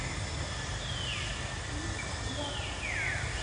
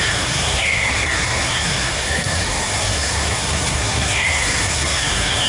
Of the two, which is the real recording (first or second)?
first